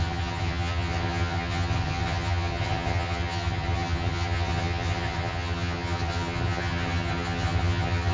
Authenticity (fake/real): fake